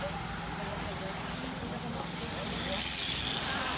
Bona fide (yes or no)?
yes